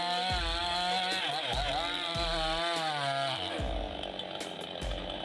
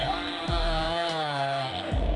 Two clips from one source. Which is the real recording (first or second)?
first